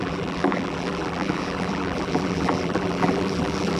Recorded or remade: remade